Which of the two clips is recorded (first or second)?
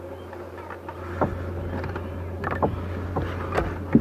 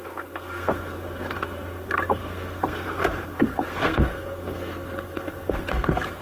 first